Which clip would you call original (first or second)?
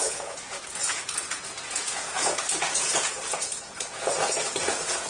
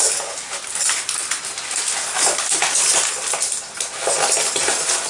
second